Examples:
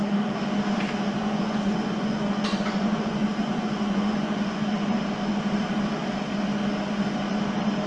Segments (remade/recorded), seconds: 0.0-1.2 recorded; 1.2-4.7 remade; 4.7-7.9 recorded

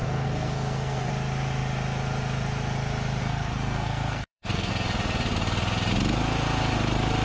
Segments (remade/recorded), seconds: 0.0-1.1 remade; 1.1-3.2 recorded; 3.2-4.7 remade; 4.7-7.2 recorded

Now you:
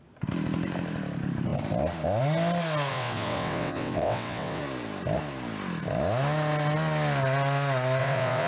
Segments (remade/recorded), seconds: 0.0-2.9 recorded; 2.9-4.6 remade; 4.6-8.0 recorded; 8.0-8.5 remade